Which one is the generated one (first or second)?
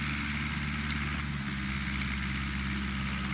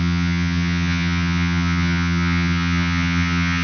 second